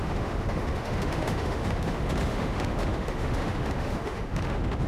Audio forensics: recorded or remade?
remade